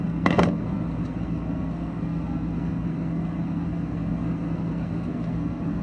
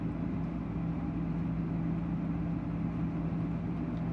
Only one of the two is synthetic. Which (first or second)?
first